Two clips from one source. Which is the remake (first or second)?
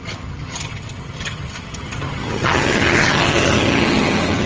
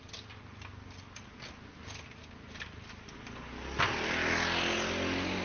first